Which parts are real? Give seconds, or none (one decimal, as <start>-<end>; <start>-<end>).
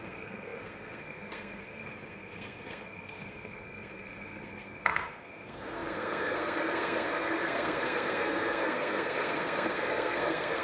none